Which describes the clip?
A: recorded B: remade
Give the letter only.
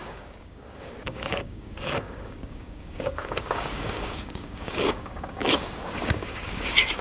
B